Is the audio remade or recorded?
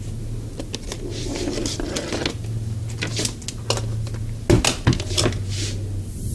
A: recorded